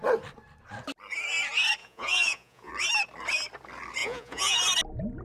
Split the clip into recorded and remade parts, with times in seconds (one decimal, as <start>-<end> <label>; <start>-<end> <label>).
0.0-1.8 recorded; 1.8-2.7 remade; 2.7-4.0 recorded; 4.0-4.6 remade; 4.6-5.2 recorded